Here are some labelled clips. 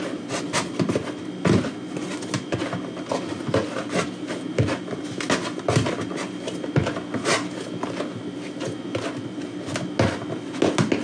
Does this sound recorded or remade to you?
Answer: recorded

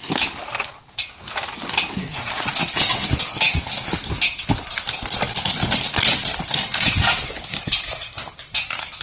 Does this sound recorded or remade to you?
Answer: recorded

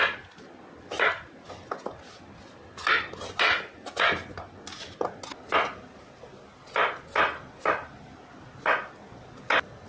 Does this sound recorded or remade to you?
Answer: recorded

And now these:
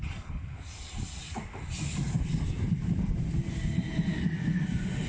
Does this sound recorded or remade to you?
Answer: recorded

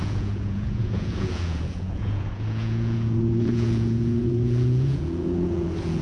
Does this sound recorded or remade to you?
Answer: remade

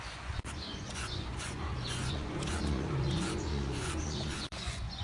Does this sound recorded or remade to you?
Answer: remade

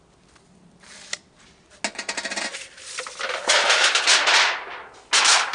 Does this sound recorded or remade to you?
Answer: recorded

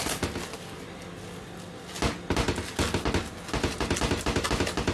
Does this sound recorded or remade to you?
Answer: recorded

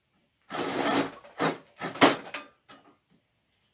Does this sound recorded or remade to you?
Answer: recorded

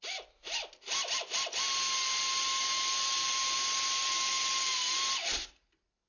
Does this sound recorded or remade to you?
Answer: recorded